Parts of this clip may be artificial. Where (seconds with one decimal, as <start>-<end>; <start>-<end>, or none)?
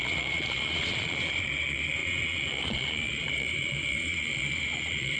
0.0-5.2